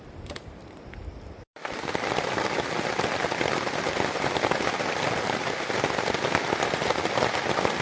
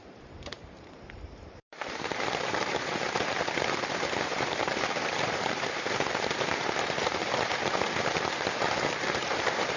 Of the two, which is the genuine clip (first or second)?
first